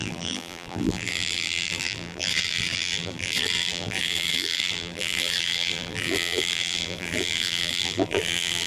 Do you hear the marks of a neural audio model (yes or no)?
yes